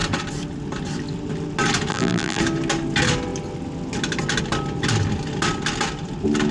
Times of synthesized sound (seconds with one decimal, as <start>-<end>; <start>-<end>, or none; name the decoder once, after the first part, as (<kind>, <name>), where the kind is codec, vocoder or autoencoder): 1.9-2.4 (vocoder, BigVGAN v2)